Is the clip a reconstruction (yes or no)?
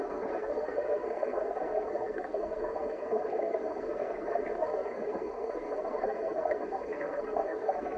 yes